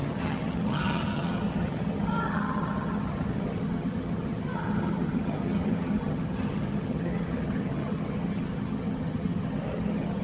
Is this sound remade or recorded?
remade